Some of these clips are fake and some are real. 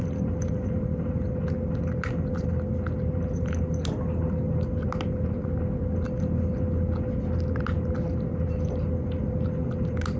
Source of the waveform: real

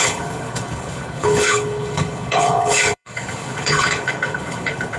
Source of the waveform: fake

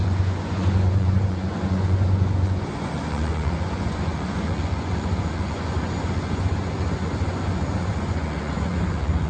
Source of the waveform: fake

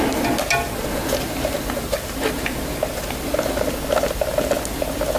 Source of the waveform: real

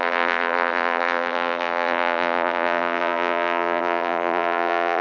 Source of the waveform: fake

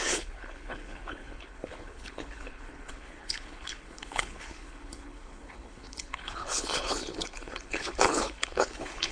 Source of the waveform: fake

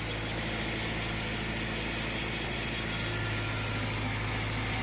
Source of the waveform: real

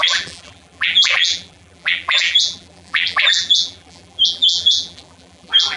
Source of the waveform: fake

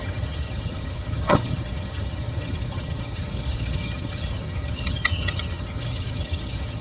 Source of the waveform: fake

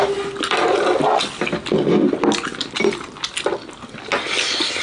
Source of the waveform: real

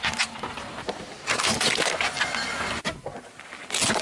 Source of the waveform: real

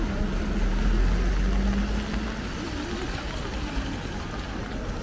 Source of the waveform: real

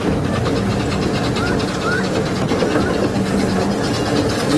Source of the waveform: real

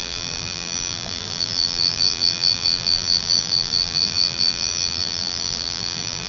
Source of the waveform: fake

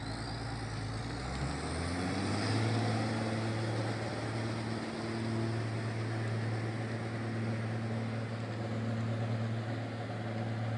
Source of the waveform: real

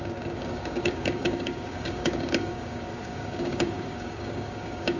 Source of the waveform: fake